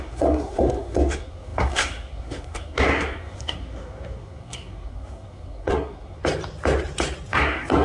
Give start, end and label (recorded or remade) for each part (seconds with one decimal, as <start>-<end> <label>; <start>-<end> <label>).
0.0-6.2 remade; 6.2-7.3 recorded; 7.3-7.8 remade